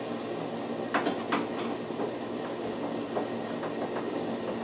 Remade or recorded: recorded